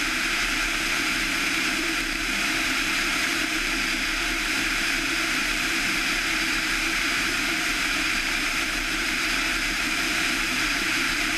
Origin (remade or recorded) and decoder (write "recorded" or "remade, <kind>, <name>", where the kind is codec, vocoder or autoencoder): remade, vocoder, BigVGAN v2